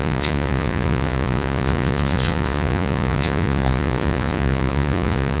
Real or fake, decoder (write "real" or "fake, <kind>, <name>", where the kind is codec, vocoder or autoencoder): fake, vocoder, Vocos